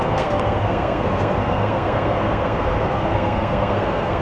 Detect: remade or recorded remade